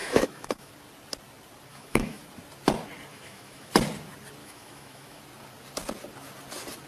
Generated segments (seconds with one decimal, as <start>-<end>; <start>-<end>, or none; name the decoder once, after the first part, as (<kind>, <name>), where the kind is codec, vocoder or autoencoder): 0.0-0.7 (autoencoder, DAC-VAE); 1.7-2.2; 3.1-3.7; 4.4-5.2

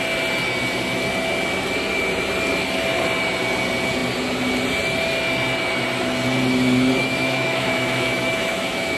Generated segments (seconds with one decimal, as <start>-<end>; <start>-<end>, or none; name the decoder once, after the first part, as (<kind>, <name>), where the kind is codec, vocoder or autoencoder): 7.0-9.0 (autoencoder, DAC-VAE)

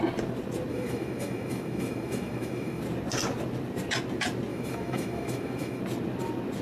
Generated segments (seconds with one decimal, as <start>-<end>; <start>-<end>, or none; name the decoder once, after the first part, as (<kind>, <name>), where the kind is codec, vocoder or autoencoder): 0.7-2.8 (autoencoder, DAC-VAE); 4.5-5.8

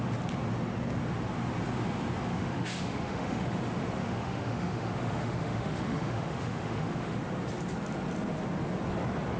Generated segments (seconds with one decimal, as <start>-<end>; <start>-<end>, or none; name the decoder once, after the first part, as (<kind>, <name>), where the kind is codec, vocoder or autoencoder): 2.3-3.6 (autoencoder, DAC-VAE); 4.0-7.2

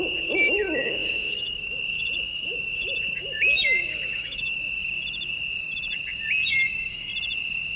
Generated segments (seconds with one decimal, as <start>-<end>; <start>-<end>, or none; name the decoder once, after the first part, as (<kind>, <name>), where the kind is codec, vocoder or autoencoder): 0.0-4.8 (autoencoder, DAC-VAE); 6.5-7.1